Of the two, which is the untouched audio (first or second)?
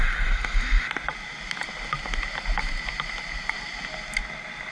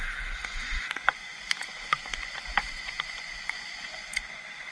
first